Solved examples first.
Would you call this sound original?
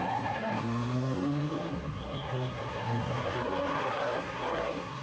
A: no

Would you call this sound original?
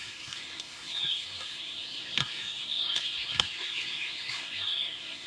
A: no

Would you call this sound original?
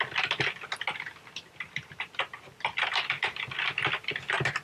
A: yes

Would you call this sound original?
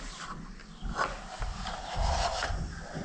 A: yes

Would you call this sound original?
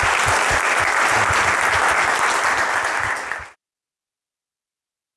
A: yes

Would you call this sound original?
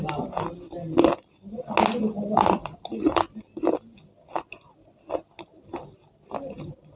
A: yes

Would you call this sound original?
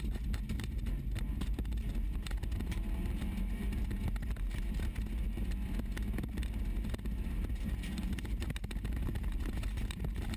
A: yes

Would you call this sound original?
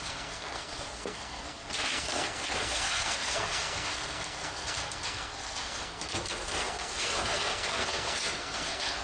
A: no